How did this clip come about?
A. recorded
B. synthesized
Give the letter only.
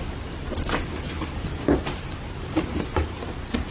A